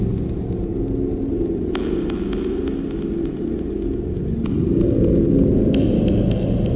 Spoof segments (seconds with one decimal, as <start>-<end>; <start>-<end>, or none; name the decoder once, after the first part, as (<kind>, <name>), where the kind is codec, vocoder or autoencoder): none

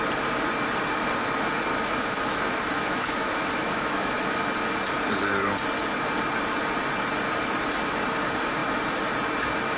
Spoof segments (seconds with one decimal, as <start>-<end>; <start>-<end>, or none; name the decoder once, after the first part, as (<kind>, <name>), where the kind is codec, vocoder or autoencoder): 1.7-4.4 (autoencoder, DAC-VAE)

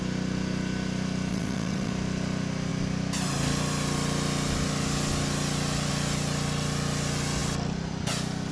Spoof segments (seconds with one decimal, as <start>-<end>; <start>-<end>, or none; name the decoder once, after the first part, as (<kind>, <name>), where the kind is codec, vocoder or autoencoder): 1.3-1.9 (vocoder, WaveNeXt)

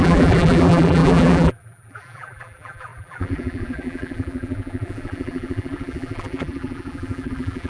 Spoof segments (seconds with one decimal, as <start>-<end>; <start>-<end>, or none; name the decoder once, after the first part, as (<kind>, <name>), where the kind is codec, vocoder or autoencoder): 0.0-7.7 (vocoder, BigVGAN v2)

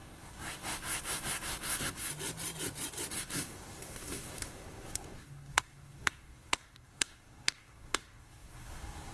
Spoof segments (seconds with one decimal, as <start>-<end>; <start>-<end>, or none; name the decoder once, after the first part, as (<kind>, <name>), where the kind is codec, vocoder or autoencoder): 0.0-2.1 (codec, SNAC); 3.1-9.1

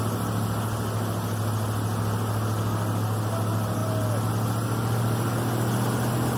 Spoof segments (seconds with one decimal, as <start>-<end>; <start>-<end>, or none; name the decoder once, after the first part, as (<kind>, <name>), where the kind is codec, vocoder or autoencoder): none

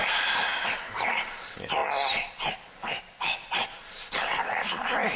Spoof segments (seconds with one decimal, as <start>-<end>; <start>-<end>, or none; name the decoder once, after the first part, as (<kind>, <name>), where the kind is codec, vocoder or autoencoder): none